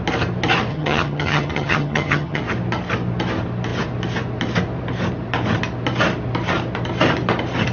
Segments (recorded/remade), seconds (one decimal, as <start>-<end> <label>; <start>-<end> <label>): 0.0-0.7 recorded; 0.7-2.4 remade; 2.4-7.7 recorded